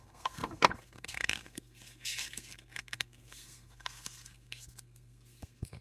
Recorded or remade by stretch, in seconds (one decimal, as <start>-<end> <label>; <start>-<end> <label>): 0.0-5.8 remade